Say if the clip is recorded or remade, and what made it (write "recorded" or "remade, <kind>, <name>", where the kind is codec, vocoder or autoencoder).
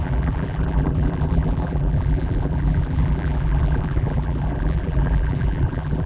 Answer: remade, vocoder, BigVGAN v2